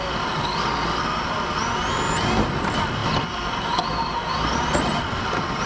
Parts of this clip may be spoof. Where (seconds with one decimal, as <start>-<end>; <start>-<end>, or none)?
none